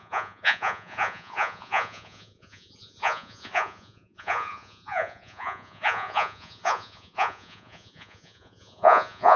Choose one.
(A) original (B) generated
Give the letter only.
B